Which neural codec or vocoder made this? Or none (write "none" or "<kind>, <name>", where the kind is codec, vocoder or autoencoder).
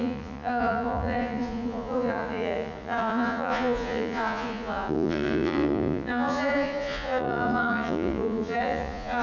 vocoder, Vocos